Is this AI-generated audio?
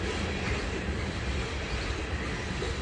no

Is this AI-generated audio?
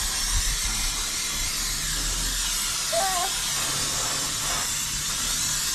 no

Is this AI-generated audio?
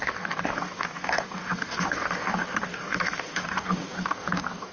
yes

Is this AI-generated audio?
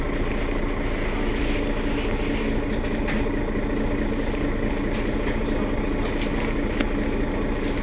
no